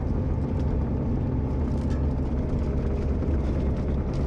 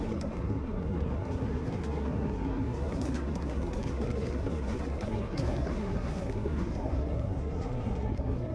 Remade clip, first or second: second